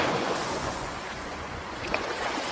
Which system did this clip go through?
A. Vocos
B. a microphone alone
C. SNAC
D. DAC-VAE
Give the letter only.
A